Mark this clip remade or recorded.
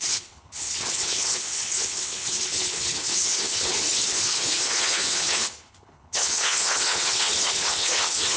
remade